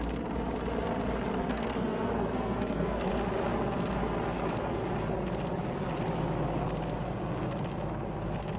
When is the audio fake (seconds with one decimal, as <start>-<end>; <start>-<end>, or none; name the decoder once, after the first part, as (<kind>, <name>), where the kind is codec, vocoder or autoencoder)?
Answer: 1.3-3.1 (codec, SNAC)